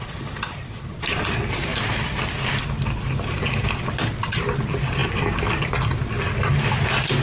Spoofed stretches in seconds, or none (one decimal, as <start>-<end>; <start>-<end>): none